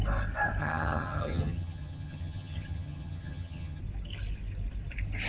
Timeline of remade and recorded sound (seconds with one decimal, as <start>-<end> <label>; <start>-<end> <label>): 0.0-0.6 recorded; 0.6-3.8 remade; 3.8-5.3 recorded